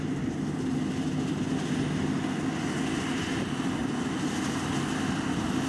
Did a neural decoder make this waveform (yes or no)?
no